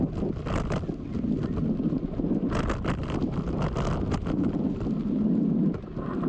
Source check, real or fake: real